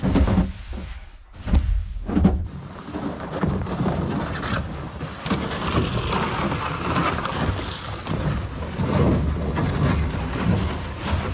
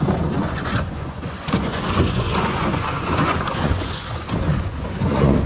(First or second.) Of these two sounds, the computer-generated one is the second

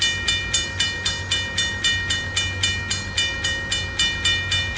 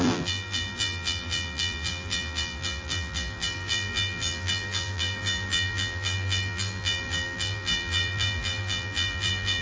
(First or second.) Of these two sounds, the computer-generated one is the second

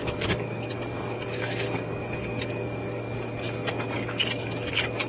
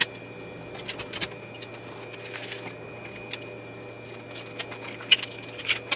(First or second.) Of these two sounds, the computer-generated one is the first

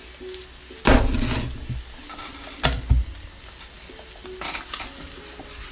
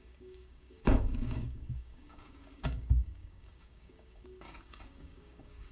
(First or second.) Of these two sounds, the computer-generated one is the second